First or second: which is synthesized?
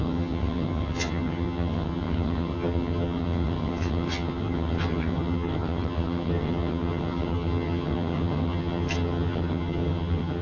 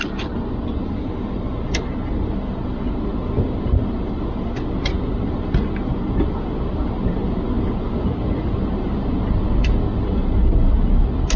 first